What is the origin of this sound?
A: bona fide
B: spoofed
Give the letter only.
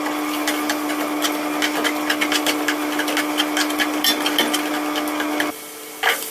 A